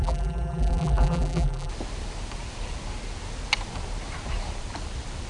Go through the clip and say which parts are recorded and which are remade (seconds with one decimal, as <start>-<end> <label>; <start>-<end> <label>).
0.0-1.7 remade; 1.7-5.3 recorded